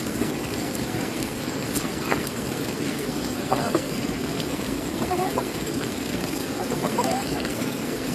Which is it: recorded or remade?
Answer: remade